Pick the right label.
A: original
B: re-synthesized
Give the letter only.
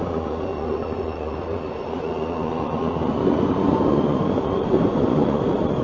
B